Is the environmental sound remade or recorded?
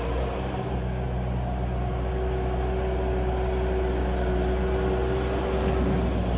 recorded